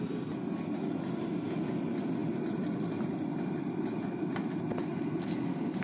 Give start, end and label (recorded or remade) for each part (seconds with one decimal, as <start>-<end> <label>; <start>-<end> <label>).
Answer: 0.0-5.8 recorded